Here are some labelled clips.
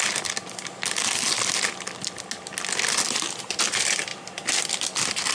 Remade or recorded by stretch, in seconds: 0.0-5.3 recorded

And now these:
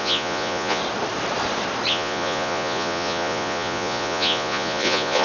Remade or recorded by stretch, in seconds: 0.0-0.8 remade; 0.8-1.9 recorded; 1.9-5.2 remade